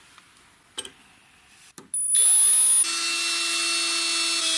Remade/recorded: recorded